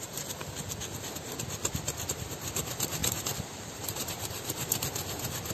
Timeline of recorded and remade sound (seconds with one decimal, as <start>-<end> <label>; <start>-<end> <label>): 0.0-0.4 remade; 0.4-2.1 recorded; 2.1-5.5 remade